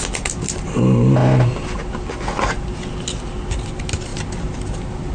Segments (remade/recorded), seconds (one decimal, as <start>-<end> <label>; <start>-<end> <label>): 0.0-5.1 recorded